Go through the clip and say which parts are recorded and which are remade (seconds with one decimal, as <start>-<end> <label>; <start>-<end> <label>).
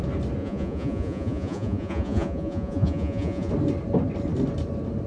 0.0-0.4 recorded; 0.4-3.5 remade; 3.5-5.1 recorded